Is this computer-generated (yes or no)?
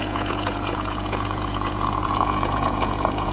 yes